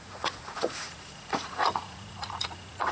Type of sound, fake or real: fake